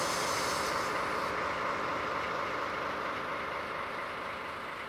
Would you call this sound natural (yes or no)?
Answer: yes